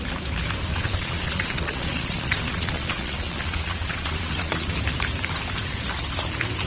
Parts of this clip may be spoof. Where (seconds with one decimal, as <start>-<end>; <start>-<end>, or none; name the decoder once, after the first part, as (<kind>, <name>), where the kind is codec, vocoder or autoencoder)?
0.7-4.7 (vocoder, Vocos)